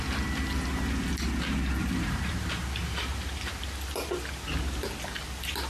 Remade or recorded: recorded